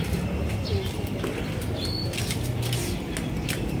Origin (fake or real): real